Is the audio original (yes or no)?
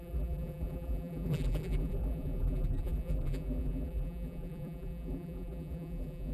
no